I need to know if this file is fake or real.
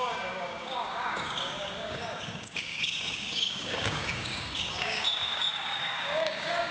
fake